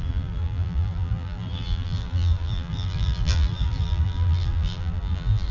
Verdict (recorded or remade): remade